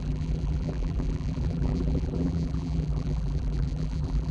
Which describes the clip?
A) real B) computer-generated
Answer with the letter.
B